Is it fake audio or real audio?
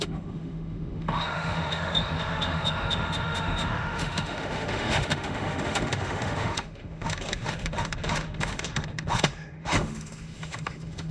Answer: fake